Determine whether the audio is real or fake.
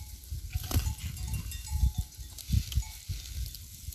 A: real